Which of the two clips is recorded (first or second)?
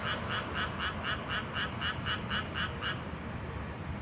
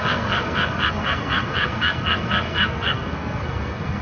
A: first